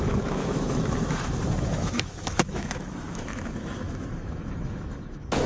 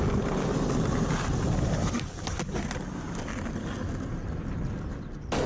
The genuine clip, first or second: second